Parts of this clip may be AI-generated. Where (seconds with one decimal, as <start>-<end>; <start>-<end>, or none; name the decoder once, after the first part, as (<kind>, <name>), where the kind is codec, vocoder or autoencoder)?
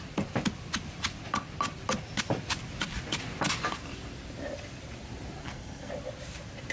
5.4-5.9 (codec, SNAC)